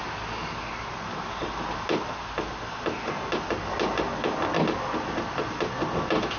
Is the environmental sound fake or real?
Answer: real